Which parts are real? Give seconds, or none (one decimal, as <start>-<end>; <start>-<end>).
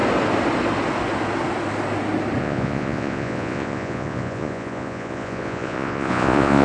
0.0-2.4